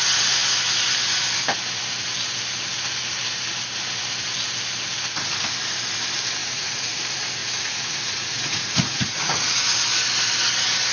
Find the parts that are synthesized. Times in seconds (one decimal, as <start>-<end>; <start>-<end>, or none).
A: 6.4-7.0; 7.4-9.6